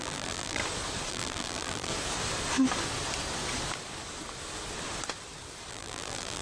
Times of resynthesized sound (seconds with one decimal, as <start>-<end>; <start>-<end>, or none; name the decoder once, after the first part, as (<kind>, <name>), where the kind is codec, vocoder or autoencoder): 0.0-0.6 (vocoder, BigVGAN v2); 1.1-1.9; 5.7-6.4